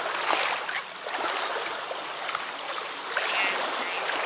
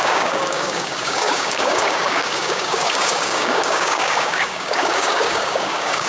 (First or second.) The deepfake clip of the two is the second